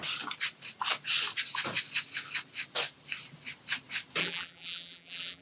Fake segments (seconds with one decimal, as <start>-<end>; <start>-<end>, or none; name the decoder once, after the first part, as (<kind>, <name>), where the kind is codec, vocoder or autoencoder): 4.2-5.4 (vocoder, BigVGAN v2)